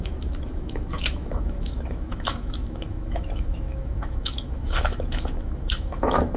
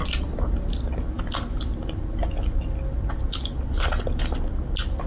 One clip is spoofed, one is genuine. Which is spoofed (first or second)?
first